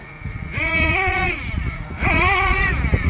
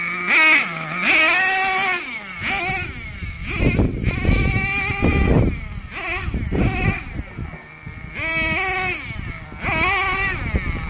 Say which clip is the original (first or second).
second